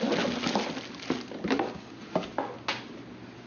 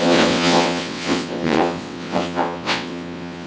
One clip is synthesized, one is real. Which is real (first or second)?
first